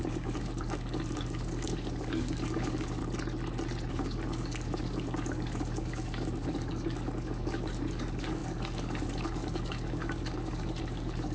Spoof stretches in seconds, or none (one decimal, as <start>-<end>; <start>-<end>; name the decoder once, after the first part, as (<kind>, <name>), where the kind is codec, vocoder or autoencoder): 0.0-3.0 (codec, DAC); 3.9-11.3